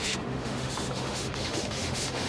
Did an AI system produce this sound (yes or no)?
yes